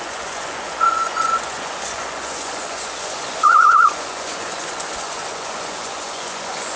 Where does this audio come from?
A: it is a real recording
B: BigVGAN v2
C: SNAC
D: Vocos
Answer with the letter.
D